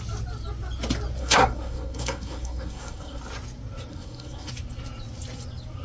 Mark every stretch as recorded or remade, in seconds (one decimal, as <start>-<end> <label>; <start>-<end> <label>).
0.0-1.2 recorded; 1.2-3.2 remade; 3.2-3.9 recorded; 3.9-4.5 remade; 4.5-5.8 recorded

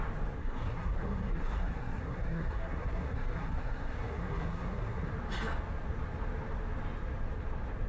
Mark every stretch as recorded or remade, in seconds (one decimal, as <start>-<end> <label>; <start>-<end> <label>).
0.0-0.4 recorded; 0.4-5.1 remade; 5.1-7.9 recorded

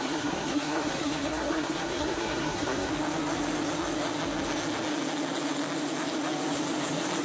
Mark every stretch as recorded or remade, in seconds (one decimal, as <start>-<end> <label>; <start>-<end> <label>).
0.0-2.9 remade; 2.9-7.2 recorded